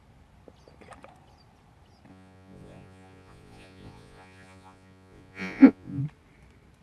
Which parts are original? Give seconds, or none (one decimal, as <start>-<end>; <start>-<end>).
0.0-2.1; 6.0-6.8